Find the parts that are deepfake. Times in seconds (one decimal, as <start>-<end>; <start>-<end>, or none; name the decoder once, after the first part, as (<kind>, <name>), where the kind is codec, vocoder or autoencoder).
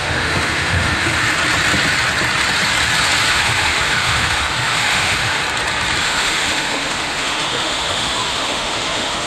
0.0-1.3 (autoencoder, DAC-VAE); 3.3-5.4; 6.0-9.3